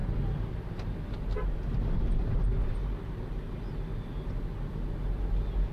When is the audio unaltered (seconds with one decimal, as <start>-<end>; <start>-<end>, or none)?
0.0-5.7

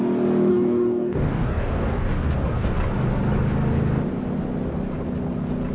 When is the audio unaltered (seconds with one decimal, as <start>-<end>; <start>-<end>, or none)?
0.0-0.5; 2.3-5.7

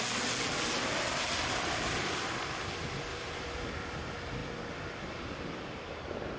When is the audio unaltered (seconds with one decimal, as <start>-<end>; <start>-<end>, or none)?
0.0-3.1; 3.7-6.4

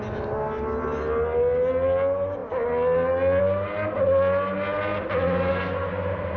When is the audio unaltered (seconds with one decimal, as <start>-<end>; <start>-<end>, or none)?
0.0-6.4

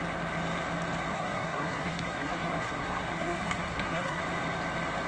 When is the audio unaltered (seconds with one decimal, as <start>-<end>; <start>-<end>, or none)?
0.0-1.1; 4.2-5.1